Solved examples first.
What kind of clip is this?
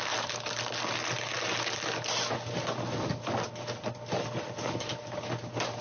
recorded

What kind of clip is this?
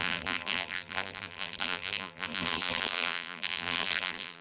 remade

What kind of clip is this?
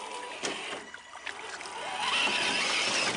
recorded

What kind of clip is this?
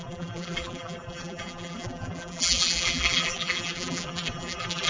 remade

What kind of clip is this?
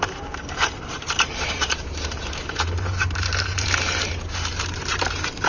remade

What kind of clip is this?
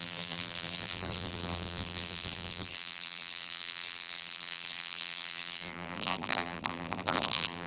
remade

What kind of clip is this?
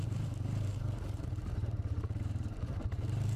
remade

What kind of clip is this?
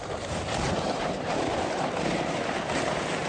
remade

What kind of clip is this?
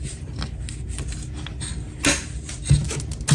recorded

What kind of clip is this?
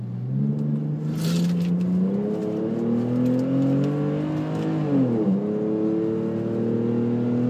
recorded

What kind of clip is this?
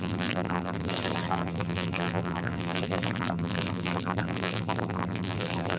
remade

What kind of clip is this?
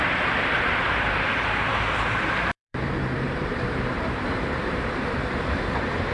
remade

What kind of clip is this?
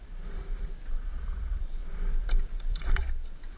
remade